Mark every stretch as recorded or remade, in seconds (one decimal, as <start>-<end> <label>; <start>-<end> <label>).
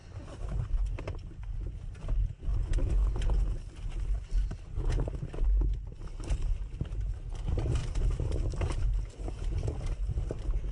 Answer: 0.0-7.8 recorded; 7.8-8.4 remade; 8.4-10.7 recorded